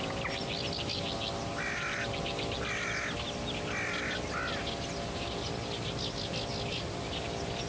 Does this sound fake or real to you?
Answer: real